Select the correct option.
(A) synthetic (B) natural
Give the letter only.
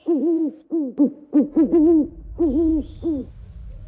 A